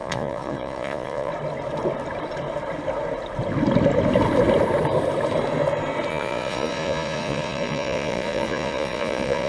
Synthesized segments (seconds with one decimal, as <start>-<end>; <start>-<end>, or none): 0.0-1.3; 6.1-9.5